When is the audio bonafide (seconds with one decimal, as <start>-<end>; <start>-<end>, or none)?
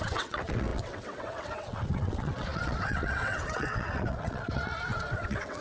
none